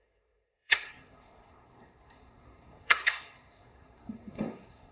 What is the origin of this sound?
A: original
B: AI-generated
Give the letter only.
B